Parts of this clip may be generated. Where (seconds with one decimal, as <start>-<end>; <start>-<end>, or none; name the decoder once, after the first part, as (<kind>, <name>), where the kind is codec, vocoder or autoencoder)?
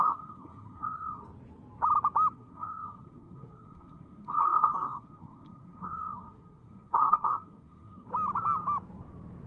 0.0-1.2 (codec, SNAC); 2.3-8.1